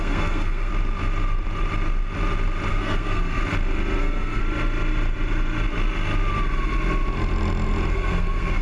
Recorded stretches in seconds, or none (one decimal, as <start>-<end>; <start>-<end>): 0.7-2.7; 3.4-4.0; 4.4-7.9